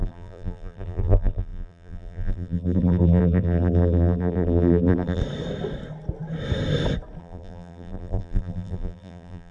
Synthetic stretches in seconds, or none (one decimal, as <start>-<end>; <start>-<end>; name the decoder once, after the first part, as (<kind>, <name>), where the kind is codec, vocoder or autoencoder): 0.0-5.2 (vocoder, BigVGAN v2); 7.2-9.5